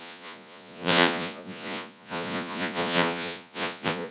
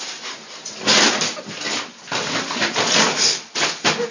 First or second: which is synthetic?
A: first